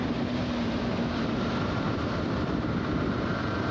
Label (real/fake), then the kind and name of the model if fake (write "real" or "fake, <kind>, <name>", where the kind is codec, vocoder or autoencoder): fake, vocoder, BigVGAN v2